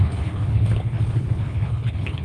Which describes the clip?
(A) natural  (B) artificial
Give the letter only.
B